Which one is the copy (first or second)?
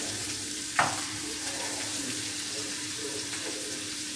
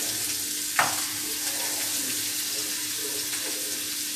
first